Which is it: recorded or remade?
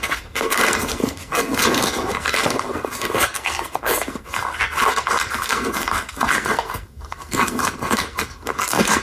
remade